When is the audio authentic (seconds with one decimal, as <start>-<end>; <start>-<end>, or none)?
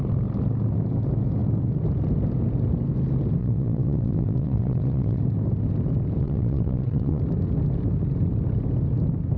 0.0-3.4; 5.2-6.2; 7.2-9.4